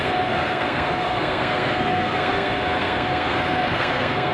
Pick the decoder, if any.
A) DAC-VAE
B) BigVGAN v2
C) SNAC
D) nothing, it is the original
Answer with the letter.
C